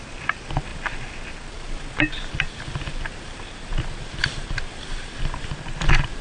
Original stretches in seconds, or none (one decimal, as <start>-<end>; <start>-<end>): 0.0-6.2